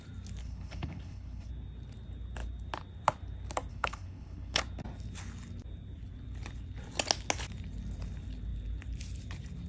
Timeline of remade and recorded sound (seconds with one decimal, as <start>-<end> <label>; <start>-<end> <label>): 0.0-0.4 recorded; 0.4-1.5 remade; 1.5-3.7 recorded; 3.7-4.6 remade; 4.6-9.7 recorded